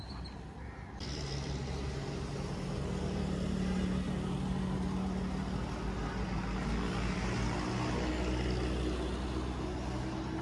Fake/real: real